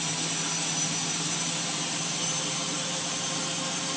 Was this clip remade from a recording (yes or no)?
no